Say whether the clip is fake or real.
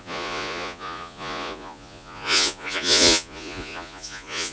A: fake